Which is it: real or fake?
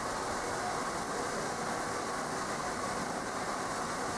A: real